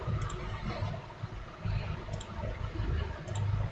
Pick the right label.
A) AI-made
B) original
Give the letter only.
B